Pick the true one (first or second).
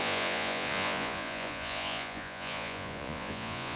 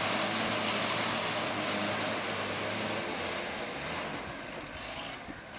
second